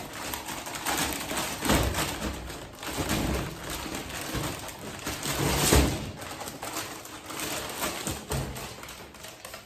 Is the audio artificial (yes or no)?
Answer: no